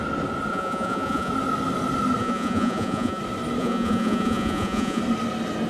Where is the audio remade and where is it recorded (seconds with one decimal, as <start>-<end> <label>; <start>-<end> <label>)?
0.0-0.5 recorded; 0.5-1.3 remade; 1.3-2.2 recorded; 2.2-3.2 remade; 3.2-3.6 recorded; 3.6-5.0 remade; 5.0-5.7 recorded